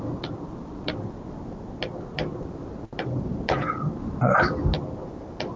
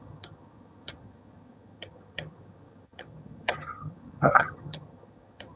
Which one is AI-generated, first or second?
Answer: second